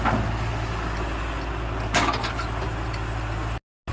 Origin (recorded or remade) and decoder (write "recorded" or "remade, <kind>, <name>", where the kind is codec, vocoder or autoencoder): recorded